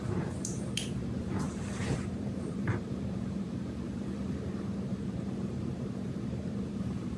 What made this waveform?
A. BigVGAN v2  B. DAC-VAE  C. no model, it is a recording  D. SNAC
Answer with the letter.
A